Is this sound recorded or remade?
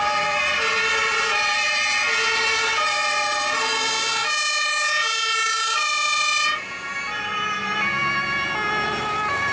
recorded